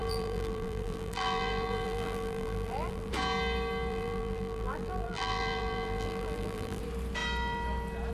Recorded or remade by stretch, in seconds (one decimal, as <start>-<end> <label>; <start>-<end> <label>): 0.0-3.1 remade; 3.1-3.9 recorded; 3.9-6.8 remade; 6.8-8.1 recorded